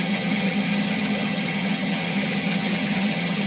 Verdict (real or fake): fake